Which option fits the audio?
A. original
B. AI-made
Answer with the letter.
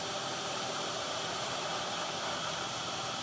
B